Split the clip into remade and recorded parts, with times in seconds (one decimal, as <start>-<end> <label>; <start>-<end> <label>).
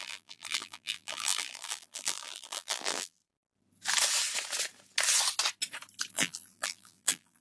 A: 0.0-3.2 remade; 3.2-6.1 recorded; 6.1-7.4 remade